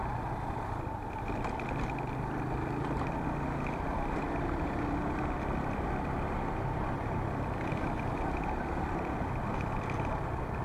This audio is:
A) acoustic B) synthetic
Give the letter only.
A